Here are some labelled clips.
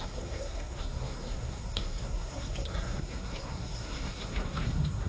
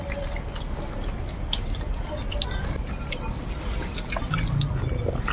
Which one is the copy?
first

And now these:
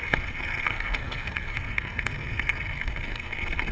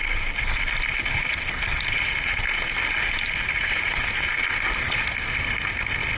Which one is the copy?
first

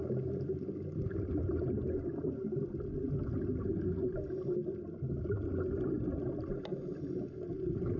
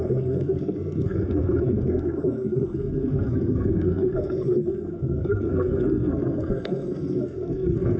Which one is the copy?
second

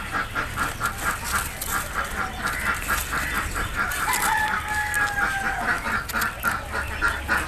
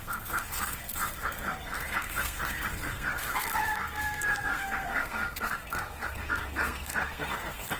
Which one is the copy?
second